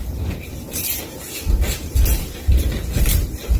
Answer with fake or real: fake